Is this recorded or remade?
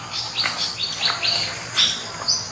recorded